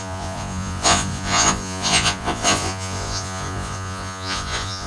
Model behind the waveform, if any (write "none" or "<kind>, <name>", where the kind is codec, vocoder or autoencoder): vocoder, Vocos